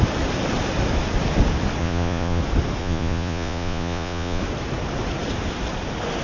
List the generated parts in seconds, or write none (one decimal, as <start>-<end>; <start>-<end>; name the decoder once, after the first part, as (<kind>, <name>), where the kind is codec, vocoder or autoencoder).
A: 1.8-2.4 (vocoder, Vocos); 2.8-4.4